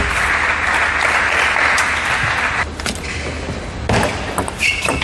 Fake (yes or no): no